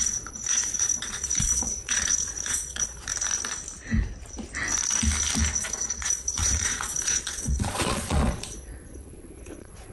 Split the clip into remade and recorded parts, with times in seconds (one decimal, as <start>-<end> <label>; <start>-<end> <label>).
0.0-3.1 remade; 3.1-5.6 recorded; 5.6-9.9 remade